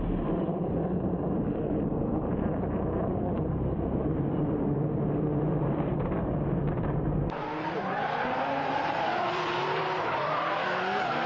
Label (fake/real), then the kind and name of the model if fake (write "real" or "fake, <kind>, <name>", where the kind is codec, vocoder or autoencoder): fake, vocoder, BigVGAN v2